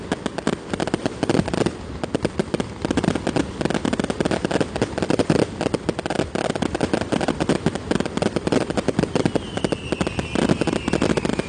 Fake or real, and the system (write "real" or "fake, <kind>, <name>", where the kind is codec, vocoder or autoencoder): real